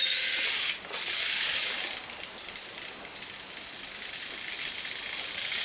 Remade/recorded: recorded